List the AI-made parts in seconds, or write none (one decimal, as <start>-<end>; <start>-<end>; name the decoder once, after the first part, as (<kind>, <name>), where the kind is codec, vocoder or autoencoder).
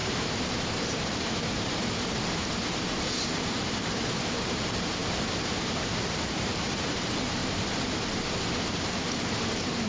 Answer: 0.0-7.4 (vocoder, BigVGAN v2); 9.5-9.9